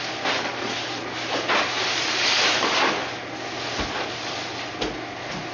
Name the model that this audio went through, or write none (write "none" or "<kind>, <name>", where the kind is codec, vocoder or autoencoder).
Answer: none